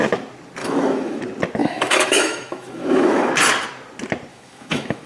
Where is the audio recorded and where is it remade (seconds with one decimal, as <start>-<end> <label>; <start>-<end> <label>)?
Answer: 0.0-0.6 recorded; 0.6-1.2 remade; 1.2-1.6 recorded; 1.6-3.3 remade; 3.3-4.3 recorded; 4.3-5.1 remade